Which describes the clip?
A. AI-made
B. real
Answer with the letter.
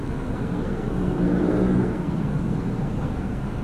A